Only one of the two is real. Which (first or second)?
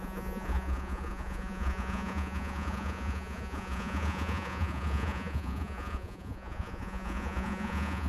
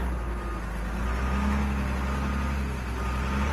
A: second